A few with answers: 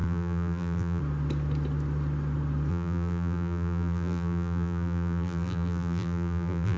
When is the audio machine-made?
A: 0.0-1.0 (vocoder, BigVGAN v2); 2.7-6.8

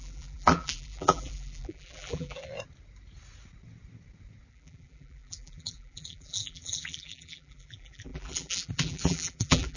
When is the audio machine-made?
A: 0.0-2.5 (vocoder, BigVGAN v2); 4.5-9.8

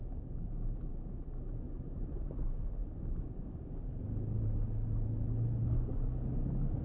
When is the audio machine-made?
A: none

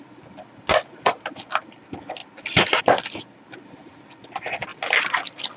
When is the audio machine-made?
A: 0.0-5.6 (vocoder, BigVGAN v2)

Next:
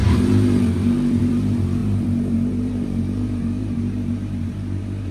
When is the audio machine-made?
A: 0.0-5.1 (vocoder, BigVGAN v2)

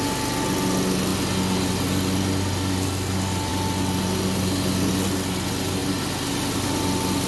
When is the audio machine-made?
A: none